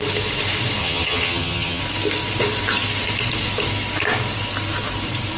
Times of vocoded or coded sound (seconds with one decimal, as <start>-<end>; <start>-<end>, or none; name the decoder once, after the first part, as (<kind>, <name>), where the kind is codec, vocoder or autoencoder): 0.8-1.8 (vocoder, HiFi-GAN)